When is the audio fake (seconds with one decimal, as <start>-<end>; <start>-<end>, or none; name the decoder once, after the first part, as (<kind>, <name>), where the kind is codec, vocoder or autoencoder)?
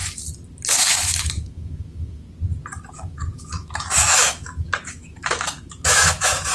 0.9-2.2 (autoencoder, DAC-VAE); 2.9-6.5